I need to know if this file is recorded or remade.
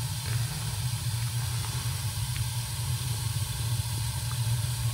recorded